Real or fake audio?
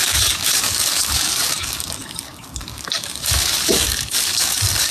fake